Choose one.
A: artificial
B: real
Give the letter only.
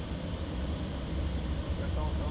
B